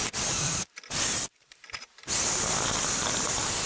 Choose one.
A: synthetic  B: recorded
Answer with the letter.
B